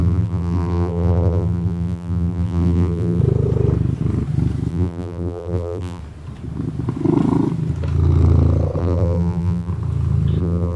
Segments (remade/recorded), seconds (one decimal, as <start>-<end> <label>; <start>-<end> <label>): 0.0-3.2 remade; 3.2-4.7 recorded; 4.7-6.0 remade; 6.0-8.8 recorded; 8.8-9.7 remade; 9.7-10.4 recorded; 10.4-10.8 remade